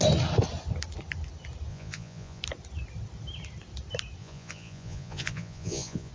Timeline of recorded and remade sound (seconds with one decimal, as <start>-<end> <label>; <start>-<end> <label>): 0.0-1.7 recorded; 1.7-2.4 remade; 2.4-4.2 recorded; 4.2-6.1 remade